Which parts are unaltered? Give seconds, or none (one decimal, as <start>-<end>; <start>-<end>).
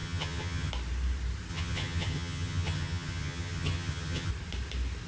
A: 0.7-1.5; 4.3-5.1